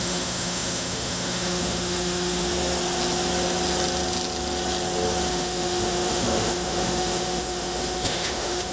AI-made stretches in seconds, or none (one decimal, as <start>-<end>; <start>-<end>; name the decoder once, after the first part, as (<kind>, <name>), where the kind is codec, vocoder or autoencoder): 0.0-2.5 (autoencoder, DAC-VAE); 5.3-8.7